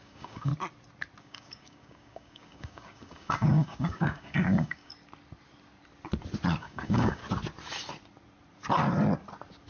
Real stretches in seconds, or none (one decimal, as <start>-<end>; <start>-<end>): 0.5-1.2; 4.9-6.6; 7.2-9.7